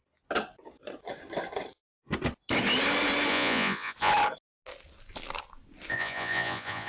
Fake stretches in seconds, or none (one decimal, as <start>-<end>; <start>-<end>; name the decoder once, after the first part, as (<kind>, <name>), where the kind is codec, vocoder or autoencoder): 3.3-4.1 (vocoder, Vocos); 5.9-6.9